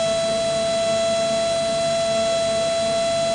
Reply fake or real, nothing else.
real